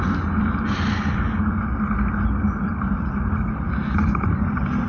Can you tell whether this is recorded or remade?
recorded